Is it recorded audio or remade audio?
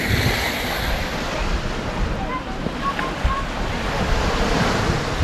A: recorded